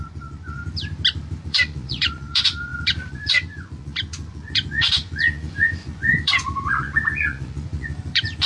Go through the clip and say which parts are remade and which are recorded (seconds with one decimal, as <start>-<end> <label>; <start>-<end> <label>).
0.0-0.6 remade; 0.6-1.4 recorded; 1.4-8.5 remade